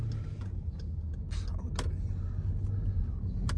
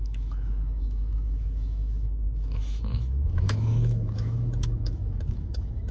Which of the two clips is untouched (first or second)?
first